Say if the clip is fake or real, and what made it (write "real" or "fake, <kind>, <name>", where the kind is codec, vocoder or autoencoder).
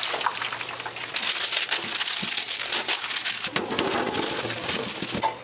real